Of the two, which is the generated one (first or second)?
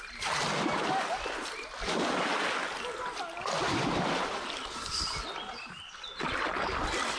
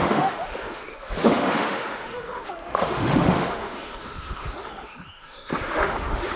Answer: second